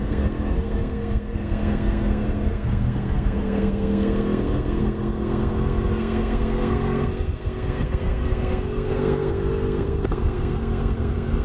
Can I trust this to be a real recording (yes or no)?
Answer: no